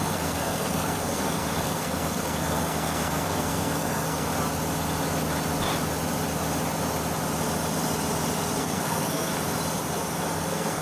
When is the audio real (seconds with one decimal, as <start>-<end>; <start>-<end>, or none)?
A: 4.3-8.6; 9.3-10.3